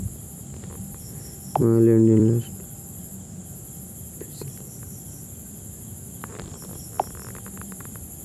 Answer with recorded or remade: remade